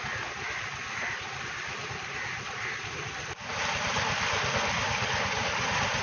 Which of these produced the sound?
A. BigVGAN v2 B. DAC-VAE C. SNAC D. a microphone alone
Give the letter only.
D